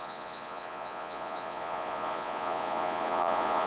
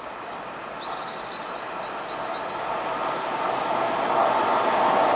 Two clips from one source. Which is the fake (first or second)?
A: first